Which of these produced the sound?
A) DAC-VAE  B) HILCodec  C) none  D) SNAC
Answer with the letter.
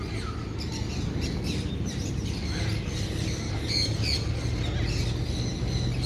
C